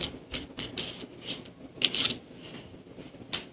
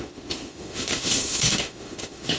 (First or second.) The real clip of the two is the first